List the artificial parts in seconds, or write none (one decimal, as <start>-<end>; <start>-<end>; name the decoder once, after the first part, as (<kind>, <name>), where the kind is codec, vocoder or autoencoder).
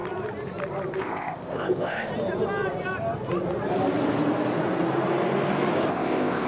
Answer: 1.0-2.1 (codec, ZipCodec); 5.9-6.5